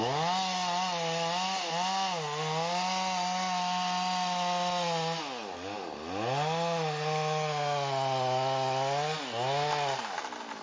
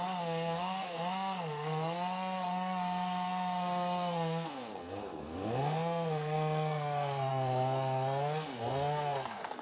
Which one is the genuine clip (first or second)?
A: first